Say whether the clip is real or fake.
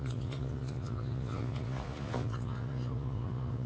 fake